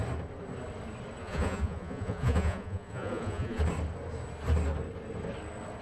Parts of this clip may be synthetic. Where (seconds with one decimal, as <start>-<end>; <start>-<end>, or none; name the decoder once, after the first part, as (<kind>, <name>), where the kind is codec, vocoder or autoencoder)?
1.2-3.6 (vocoder, Vocos)